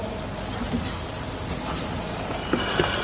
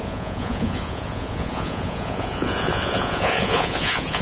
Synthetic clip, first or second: second